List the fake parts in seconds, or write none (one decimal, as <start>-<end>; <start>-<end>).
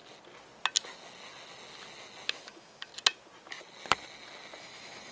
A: 2.3-2.9; 4.6-5.1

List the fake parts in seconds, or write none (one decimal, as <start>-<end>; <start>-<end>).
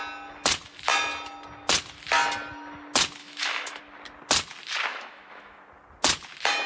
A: 3.2-3.8; 4.9-5.6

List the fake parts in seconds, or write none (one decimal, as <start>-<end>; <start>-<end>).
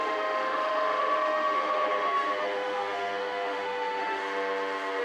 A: 0.0-4.2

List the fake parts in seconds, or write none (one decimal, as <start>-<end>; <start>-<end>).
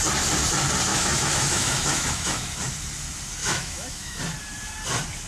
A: 0.9-2.6; 3.4-4.2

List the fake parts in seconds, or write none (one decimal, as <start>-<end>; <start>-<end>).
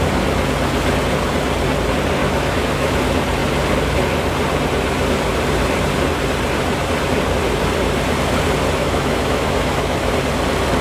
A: 2.2-3.0; 8.8-10.1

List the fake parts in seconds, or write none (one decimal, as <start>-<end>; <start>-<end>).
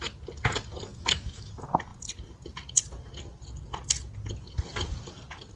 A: 0.9-1.5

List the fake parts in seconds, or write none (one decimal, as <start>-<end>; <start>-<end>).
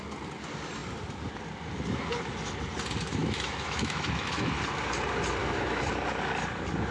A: 3.2-4.5; 5.4-5.9